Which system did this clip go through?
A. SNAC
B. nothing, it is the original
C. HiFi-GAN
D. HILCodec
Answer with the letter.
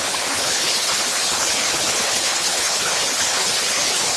D